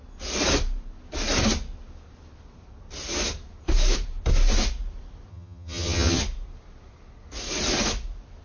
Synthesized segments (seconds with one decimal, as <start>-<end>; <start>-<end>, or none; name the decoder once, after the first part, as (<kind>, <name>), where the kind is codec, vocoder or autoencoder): 5.3-6.2 (vocoder, HiFi-GAN)